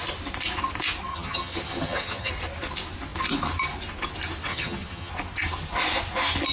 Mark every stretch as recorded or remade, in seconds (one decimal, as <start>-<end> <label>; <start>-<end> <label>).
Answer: 0.0-1.1 recorded; 1.1-2.3 remade; 2.3-4.5 recorded; 4.5-5.1 remade; 5.1-6.5 recorded